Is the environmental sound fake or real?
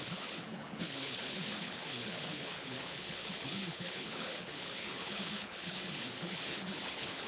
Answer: fake